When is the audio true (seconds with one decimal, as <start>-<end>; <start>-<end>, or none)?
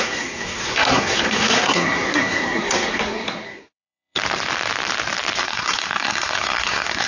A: 4.2-5.4